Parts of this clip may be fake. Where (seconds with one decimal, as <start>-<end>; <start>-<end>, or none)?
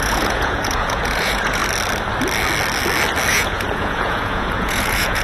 0.0-1.6; 3.3-5.2